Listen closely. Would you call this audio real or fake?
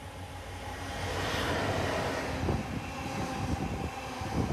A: real